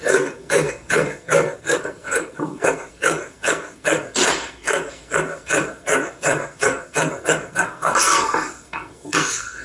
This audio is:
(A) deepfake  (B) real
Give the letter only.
A